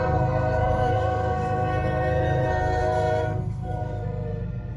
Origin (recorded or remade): remade